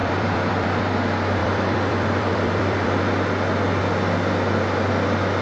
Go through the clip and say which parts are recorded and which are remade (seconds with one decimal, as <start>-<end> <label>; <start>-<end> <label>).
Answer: 0.0-0.8 remade; 0.8-1.4 recorded; 1.4-3.0 remade; 3.0-5.4 recorded